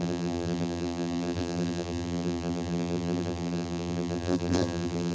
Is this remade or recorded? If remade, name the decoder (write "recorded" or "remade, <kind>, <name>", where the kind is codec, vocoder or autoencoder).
remade, vocoder, BigVGAN v2